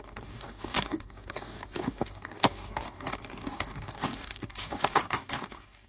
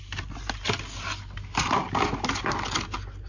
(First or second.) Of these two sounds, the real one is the second